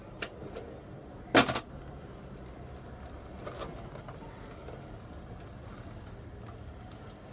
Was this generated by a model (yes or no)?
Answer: no